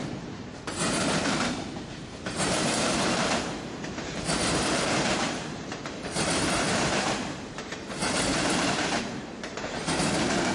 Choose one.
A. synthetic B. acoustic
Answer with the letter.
A